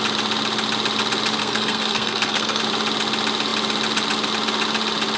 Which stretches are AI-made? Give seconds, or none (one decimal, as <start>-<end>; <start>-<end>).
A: 1.4-2.6